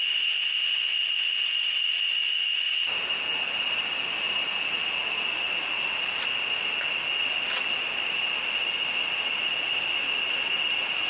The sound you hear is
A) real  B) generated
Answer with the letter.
A